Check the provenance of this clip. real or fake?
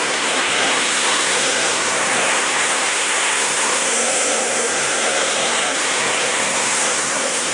fake